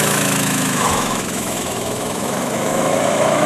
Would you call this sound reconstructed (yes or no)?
yes